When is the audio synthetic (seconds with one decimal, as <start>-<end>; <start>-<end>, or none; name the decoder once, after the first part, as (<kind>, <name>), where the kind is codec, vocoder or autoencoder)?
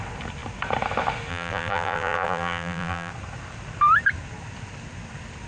1.3-3.1 (vocoder, BigVGAN v2)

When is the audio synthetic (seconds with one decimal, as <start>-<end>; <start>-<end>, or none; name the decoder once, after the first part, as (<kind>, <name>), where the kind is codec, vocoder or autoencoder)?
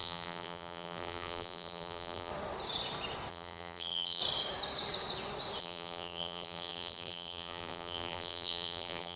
0.0-2.3 (vocoder, BigVGAN v2); 3.3-4.2; 5.6-9.2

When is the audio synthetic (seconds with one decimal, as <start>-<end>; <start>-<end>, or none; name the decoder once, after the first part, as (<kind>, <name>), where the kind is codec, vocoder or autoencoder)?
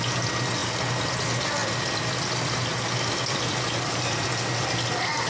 0.6-1.1 (vocoder, BigVGAN v2); 1.6-4.7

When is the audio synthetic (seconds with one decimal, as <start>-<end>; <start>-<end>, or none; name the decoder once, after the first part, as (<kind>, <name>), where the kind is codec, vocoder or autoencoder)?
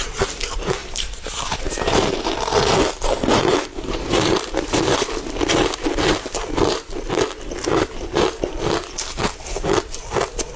0.8-2.2 (vocoder, BigVGAN v2); 3.5-4.8